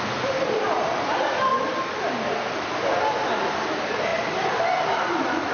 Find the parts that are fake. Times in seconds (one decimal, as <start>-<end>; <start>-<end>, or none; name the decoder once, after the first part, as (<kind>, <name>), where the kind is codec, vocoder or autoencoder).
0.0-1.5 (vocoder, BigVGAN v2); 2.7-5.5

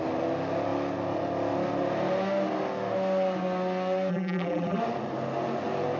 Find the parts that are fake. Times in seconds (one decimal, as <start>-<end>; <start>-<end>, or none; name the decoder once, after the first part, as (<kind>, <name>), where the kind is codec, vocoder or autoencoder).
4.1-4.8 (vocoder, BigVGAN v2)